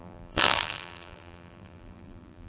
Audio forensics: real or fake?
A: fake